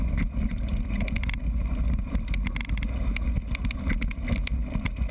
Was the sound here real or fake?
real